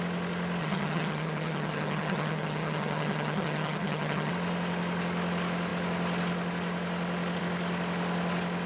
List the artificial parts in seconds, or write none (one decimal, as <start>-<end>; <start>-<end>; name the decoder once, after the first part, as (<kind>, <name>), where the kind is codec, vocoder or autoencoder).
0.6-4.3 (vocoder, HiFi-GAN)